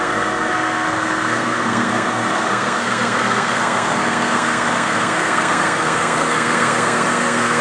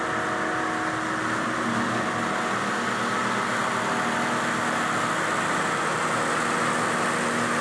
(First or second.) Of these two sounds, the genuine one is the second